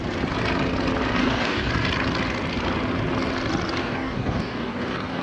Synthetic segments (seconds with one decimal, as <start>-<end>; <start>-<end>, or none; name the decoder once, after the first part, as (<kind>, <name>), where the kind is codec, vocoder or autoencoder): 1.2-1.7 (codec, DAC); 3.8-5.2